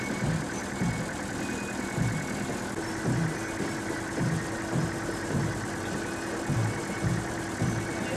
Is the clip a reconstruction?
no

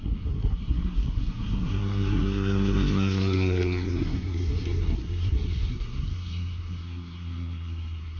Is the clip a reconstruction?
yes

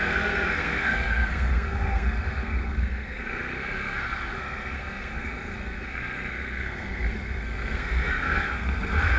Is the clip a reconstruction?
yes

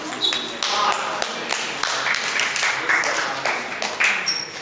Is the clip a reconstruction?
no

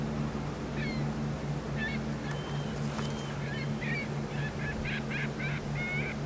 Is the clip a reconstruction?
no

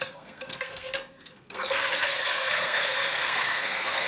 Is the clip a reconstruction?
yes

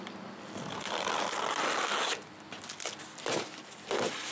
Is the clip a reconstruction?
no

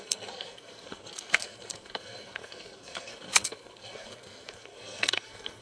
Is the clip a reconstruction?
yes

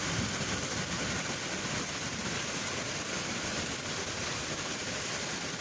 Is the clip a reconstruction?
no